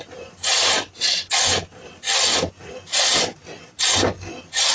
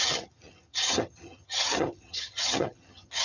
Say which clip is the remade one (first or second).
second